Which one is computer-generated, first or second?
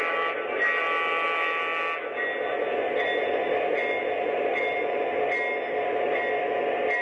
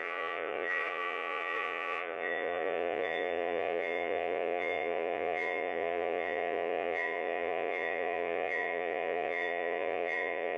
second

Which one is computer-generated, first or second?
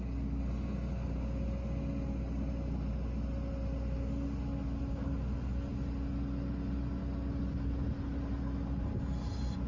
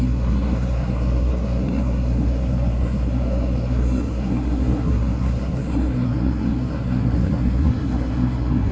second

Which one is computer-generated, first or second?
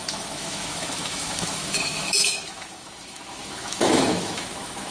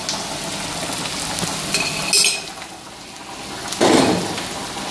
first